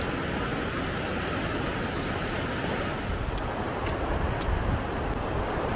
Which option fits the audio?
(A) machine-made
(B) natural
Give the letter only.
B